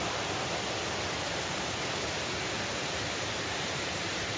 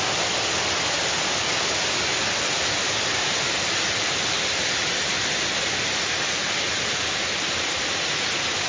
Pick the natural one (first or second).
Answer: second